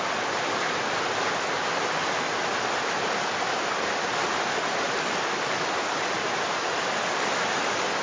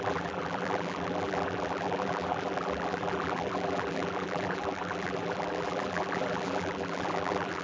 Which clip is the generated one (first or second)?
second